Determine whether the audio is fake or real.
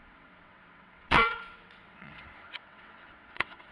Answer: fake